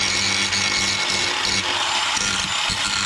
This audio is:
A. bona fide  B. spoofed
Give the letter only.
A